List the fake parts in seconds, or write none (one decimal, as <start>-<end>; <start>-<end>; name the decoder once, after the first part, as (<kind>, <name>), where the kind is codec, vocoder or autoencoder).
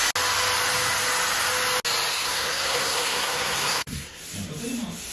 2.1-4.2 (codec, SNAC)